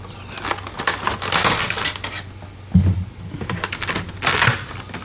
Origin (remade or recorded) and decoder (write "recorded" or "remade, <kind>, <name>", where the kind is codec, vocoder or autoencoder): recorded